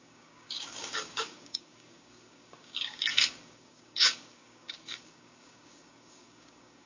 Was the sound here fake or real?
fake